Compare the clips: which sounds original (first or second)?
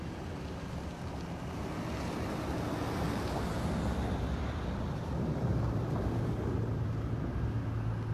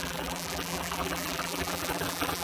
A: first